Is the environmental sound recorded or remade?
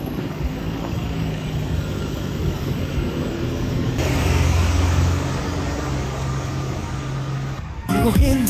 remade